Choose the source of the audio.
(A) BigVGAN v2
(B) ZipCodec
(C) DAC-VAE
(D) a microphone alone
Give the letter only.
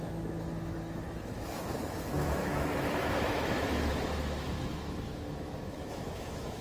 C